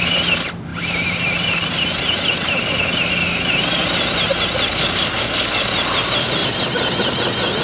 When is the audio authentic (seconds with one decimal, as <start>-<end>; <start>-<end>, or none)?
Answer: 0.0-4.8; 5.7-7.6